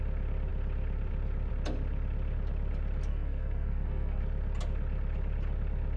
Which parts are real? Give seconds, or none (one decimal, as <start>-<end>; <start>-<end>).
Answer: 0.0-3.1; 4.2-6.0